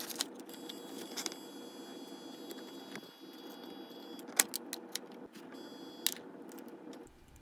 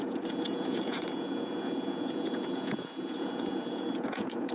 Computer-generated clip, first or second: second